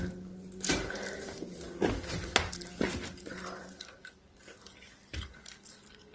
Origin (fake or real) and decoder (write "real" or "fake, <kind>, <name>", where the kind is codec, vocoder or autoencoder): real